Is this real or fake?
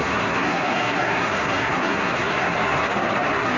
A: fake